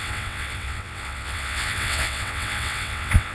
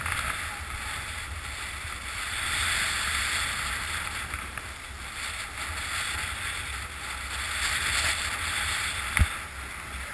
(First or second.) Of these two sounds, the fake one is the first